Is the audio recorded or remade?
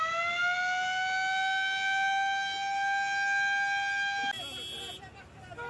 recorded